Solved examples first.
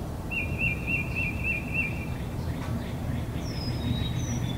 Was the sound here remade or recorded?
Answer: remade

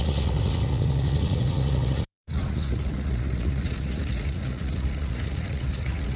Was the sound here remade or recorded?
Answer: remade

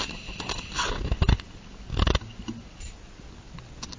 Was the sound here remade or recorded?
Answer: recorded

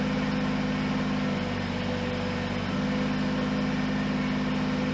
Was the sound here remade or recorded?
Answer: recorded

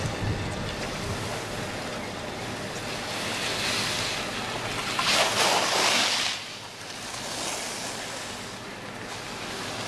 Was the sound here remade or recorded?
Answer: recorded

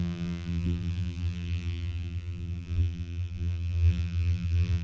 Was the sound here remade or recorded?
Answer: remade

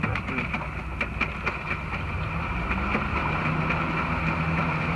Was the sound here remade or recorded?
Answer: recorded